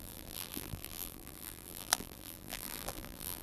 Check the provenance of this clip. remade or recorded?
remade